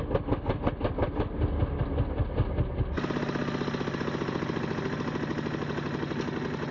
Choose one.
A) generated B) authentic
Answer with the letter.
B